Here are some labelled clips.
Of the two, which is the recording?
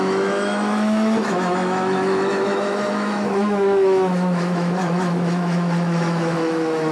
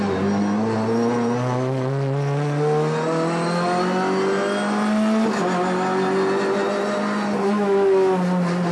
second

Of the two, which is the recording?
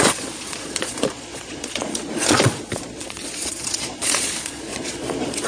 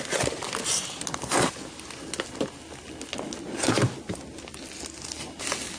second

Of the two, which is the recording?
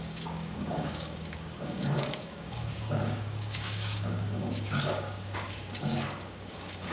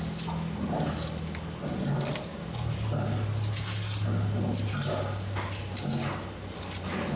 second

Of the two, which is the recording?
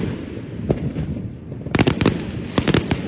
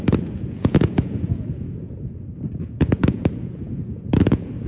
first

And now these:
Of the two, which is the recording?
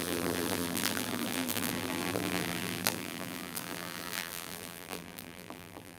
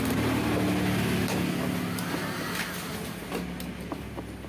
second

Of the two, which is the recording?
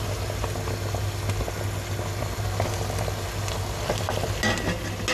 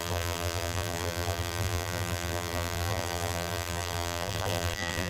first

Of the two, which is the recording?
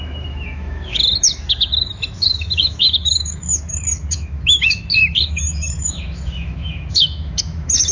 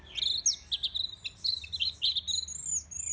second